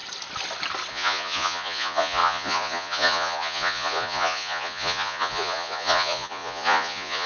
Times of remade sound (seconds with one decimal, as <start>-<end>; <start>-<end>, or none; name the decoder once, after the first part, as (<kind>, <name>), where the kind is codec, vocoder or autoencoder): 0.9-7.3 (vocoder, Vocos)